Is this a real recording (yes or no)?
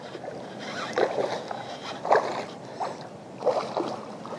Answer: yes